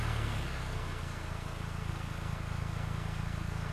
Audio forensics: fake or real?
fake